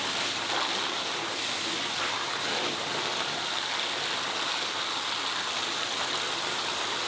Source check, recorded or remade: recorded